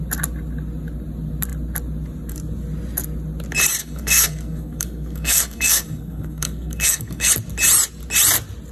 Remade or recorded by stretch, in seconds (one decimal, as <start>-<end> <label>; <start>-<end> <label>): 0.0-3.8 recorded; 3.8-7.3 remade; 7.3-8.7 recorded